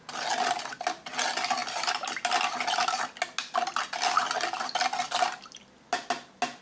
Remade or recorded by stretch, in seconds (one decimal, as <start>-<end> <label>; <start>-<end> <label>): 0.0-6.6 recorded